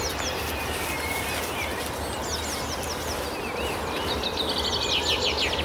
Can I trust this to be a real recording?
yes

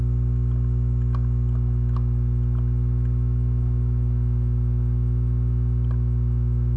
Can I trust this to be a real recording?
yes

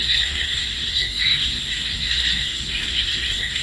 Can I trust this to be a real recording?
no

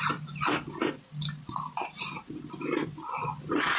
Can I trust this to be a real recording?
yes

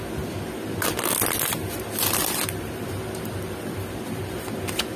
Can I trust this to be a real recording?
yes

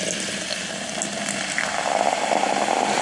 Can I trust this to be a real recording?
yes